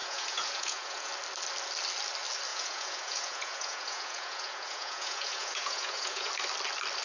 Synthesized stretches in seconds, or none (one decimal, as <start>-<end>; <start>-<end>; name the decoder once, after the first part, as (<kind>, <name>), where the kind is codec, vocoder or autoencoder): 0.0-1.1 (vocoder, Vocos); 2.5-6.3